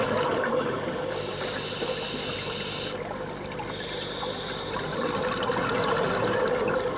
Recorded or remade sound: recorded